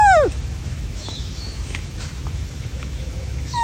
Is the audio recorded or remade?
remade